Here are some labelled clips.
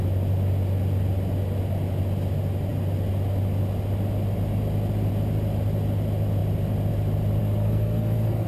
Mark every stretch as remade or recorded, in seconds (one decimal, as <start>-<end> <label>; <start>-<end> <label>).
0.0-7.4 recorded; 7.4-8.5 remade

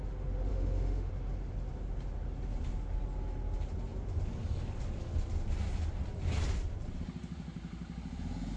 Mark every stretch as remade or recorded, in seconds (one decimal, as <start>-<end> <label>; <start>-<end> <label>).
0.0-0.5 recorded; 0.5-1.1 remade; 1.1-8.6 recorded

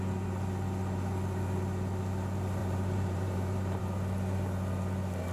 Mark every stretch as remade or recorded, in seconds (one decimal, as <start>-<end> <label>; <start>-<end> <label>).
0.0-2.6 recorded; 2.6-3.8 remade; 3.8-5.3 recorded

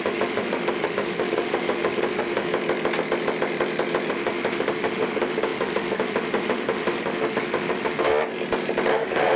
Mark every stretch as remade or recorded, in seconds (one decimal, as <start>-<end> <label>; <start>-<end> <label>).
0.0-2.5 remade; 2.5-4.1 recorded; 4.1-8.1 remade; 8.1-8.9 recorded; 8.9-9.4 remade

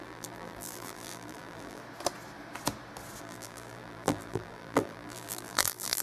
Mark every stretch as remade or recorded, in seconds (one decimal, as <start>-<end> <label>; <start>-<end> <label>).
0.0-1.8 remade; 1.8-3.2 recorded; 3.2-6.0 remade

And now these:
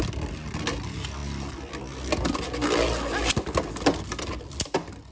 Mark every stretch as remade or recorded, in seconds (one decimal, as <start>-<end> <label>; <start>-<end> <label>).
0.0-5.1 recorded